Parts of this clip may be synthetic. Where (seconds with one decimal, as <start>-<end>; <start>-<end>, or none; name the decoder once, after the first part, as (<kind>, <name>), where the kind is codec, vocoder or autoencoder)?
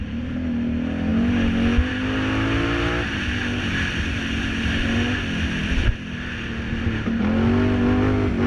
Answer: none